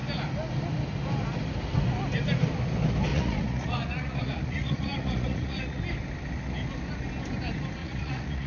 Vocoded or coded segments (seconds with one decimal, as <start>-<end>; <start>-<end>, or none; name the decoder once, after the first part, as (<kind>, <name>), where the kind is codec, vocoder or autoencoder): 3.1-5.8 (vocoder, Vocos); 7.8-8.5